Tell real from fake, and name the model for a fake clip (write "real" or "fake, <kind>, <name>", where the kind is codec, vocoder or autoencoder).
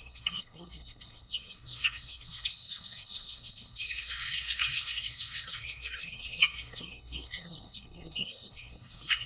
fake, codec, SNAC